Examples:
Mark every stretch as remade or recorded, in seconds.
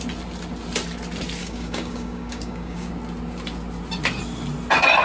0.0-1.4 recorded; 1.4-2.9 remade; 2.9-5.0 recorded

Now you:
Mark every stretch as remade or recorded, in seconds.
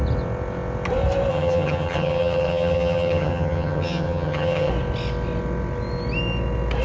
0.0-1.3 recorded; 1.3-4.7 remade; 4.7-6.8 recorded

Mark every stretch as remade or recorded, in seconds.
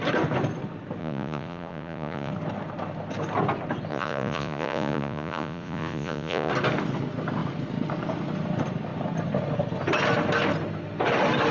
0.0-1.0 recorded; 1.0-2.3 remade; 2.3-3.9 recorded; 3.9-6.5 remade; 6.5-11.5 recorded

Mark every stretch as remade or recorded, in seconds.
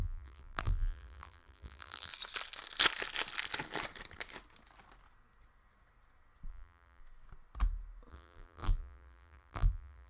0.0-2.1 remade; 2.1-6.5 recorded; 6.5-7.0 remade; 7.0-8.1 recorded; 8.1-10.1 remade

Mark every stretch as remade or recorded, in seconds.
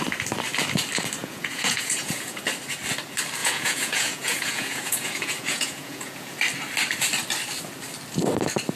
0.0-1.2 recorded; 1.2-2.4 remade; 2.4-3.4 recorded; 3.4-6.4 remade; 6.4-8.8 recorded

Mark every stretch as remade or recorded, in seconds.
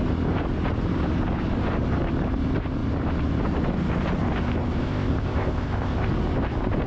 0.0-4.8 recorded; 4.8-6.1 remade; 6.1-6.9 recorded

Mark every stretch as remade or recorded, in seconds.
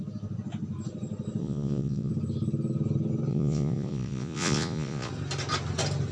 0.0-1.4 recorded; 1.4-2.1 remade; 2.1-3.3 recorded; 3.3-5.1 remade; 5.1-6.1 recorded